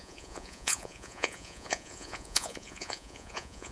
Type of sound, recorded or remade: remade